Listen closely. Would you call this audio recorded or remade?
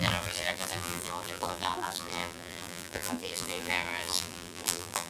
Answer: remade